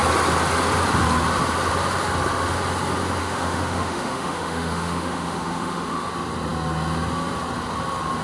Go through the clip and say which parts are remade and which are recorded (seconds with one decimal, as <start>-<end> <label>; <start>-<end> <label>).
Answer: 0.0-3.2 recorded; 3.2-6.1 remade; 6.1-8.2 recorded